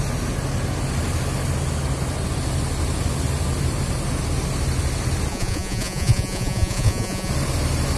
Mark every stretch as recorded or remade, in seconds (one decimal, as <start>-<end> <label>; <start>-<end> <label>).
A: 0.0-5.3 recorded; 5.3-7.3 remade; 7.3-8.0 recorded